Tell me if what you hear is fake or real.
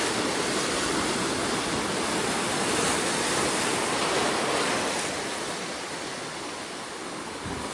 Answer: real